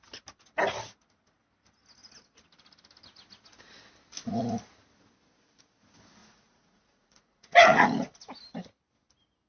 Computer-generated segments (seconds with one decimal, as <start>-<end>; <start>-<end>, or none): 6.2-8.2